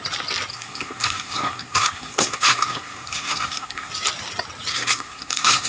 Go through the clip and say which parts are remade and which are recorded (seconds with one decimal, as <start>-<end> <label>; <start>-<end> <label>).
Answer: 0.0-0.5 recorded; 0.5-3.9 remade; 3.9-4.7 recorded; 4.7-5.7 remade